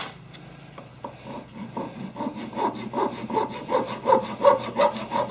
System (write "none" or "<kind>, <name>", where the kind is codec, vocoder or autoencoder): none